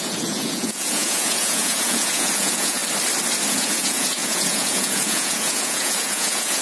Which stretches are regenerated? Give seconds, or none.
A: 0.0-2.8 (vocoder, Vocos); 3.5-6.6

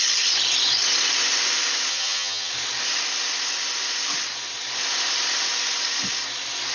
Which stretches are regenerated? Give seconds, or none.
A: 1.9-2.5 (vocoder, HiFi-GAN)

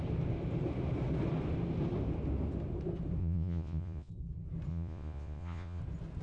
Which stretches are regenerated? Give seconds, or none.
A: 3.2-4.1 (vocoder, Vocos); 4.7-5.8

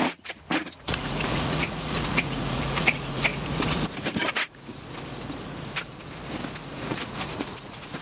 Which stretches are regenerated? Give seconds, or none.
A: 0.0-3.3 (vocoder, Vocos); 4.3-4.7; 6.6-8.0